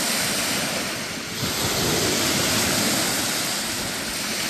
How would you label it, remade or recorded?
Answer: recorded